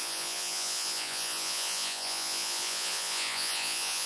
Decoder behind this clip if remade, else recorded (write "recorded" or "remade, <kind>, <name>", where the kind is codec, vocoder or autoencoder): remade, vocoder, Vocos